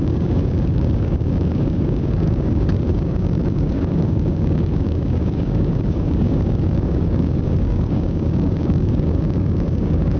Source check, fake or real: fake